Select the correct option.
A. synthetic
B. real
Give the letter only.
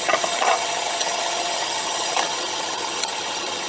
A